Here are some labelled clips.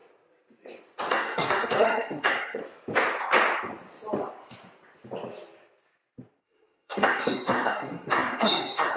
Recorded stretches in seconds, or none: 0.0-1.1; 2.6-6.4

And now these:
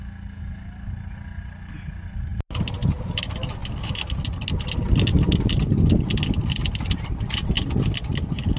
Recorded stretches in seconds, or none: 0.0-8.6

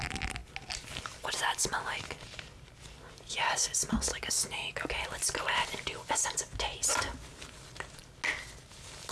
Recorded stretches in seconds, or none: 0.0-4.1; 4.9-9.1

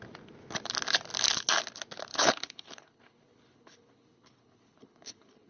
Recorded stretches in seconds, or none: 0.0-2.1